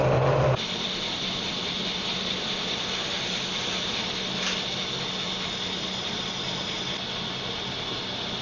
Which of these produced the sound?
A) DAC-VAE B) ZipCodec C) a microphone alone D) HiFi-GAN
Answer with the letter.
C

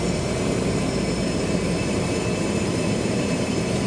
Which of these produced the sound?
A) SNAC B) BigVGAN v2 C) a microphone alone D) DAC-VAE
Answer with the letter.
B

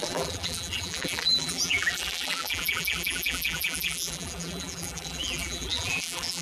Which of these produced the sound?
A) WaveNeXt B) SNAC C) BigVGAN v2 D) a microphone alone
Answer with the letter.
C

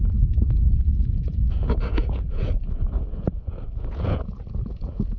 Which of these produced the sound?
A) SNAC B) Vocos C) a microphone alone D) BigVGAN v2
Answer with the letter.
B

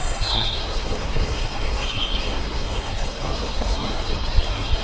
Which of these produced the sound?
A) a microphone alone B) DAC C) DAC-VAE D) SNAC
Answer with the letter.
D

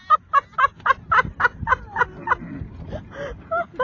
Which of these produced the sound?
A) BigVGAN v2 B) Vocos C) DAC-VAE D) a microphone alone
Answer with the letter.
D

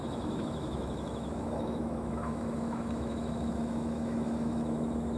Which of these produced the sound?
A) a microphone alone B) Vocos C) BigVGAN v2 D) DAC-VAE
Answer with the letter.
D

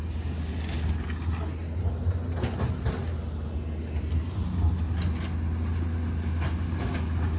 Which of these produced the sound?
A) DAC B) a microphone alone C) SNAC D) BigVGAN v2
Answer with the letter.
B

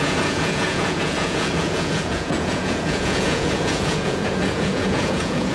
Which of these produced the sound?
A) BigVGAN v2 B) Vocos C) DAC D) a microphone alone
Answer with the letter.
B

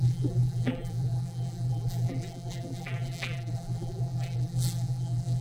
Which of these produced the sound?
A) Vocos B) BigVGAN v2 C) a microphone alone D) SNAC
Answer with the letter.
B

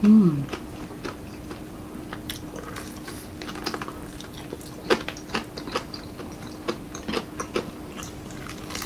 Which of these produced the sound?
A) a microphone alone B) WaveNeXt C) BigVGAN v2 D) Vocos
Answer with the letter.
A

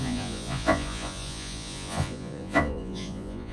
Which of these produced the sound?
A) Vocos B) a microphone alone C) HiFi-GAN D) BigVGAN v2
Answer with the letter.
A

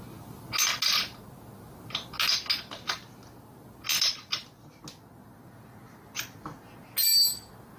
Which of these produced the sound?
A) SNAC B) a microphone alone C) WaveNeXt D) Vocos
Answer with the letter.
B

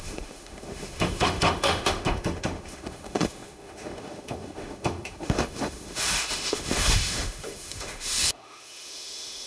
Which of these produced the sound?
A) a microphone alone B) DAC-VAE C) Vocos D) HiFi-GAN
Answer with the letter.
B